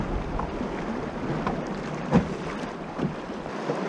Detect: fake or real real